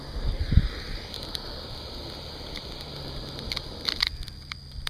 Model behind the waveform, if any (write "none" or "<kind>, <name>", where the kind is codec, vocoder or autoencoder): none